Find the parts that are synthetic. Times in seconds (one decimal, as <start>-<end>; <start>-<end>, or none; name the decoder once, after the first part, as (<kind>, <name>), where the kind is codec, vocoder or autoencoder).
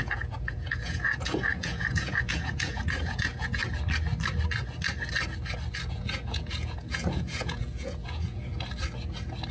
0.0-3.6 (vocoder, Vocos); 5.9-8.5